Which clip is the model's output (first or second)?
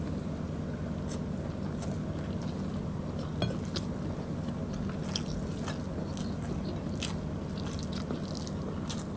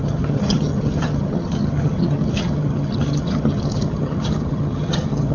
second